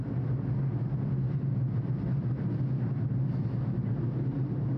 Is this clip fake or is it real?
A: real